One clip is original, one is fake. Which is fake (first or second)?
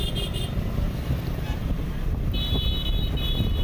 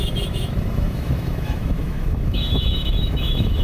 second